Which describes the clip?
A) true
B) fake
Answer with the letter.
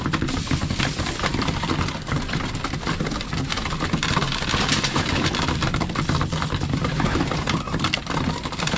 B